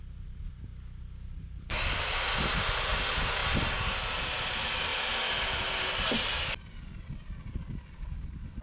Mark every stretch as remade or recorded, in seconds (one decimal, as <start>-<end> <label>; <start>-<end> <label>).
0.0-8.6 recorded